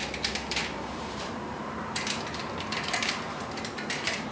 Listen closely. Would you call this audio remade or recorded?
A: remade